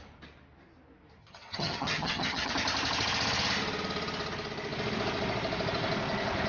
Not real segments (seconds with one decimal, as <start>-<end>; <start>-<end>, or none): 1.2-2.5